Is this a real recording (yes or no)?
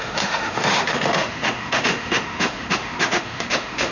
no